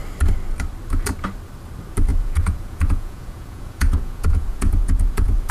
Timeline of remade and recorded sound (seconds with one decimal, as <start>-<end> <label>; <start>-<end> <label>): 0.0-2.1 recorded; 2.1-5.5 remade